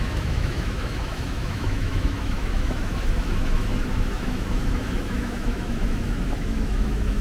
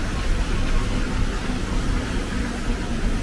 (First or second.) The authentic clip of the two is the second